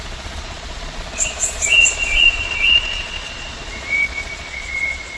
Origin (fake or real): fake